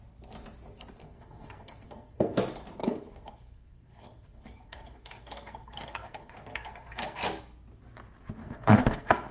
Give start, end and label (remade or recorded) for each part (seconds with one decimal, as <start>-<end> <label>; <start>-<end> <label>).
0.0-1.0 recorded; 1.0-2.4 remade; 2.4-2.8 recorded; 2.8-7.4 remade; 7.4-8.4 recorded; 8.4-9.3 remade